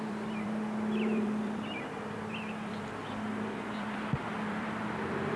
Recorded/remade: remade